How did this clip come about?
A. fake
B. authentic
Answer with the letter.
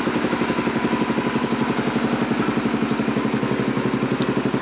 B